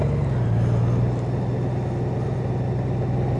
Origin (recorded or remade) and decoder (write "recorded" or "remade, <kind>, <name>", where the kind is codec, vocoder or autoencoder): recorded